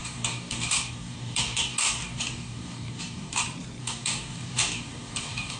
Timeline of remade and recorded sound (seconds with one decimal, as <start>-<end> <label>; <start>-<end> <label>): 0.0-3.4 remade; 3.4-3.8 recorded; 3.8-5.6 remade